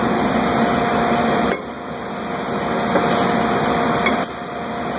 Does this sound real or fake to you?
real